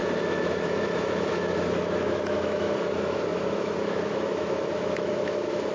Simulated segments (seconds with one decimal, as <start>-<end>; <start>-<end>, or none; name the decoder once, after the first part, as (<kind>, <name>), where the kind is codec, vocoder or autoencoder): 0.0-5.7 (autoencoder, DAC-VAE)

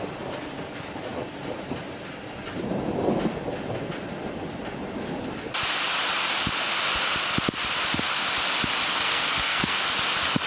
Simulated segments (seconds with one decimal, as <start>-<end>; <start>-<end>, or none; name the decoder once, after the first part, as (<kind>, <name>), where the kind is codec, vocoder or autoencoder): 8.9-9.8 (codec, SNAC)

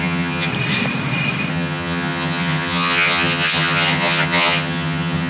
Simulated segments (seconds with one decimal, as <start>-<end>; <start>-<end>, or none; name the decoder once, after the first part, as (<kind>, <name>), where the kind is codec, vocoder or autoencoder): 0.0-0.5 (vocoder, HiFi-GAN); 1.5-5.3

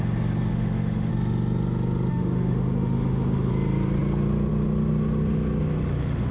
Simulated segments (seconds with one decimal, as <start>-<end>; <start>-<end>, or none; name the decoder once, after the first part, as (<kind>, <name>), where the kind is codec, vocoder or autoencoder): 0.5-1.1 (autoencoder, DAC-VAE); 2.1-3.5

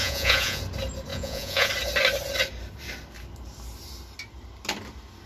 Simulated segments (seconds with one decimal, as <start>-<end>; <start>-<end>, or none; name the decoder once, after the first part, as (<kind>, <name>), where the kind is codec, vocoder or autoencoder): 0.0-0.6 (vocoder, Vocos); 1.1-1.7

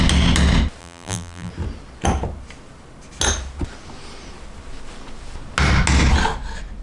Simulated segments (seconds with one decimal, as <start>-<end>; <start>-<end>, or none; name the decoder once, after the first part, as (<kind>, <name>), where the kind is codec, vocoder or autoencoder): 0.8-1.5 (vocoder, BigVGAN v2)

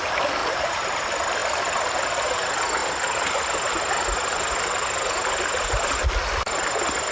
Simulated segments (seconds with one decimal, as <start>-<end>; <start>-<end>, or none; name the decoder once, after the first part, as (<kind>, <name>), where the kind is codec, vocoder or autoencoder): 0.4-1.0 (vocoder, BigVGAN v2)